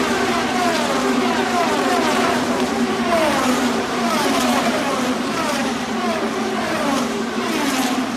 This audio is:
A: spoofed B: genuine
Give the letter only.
A